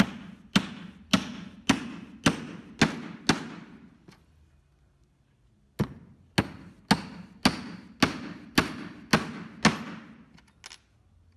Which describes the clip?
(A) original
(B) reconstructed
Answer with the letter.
A